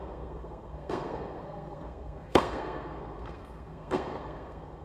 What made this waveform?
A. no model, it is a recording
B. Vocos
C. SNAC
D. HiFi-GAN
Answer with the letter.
C